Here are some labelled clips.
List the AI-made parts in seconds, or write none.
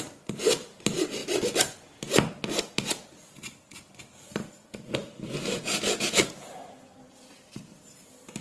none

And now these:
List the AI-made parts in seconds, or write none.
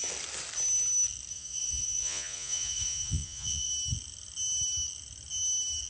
1.3-3.7 (vocoder, Vocos)